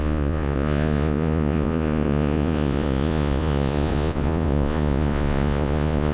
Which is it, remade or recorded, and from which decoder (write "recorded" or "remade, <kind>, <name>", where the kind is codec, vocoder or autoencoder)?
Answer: remade, vocoder, Vocos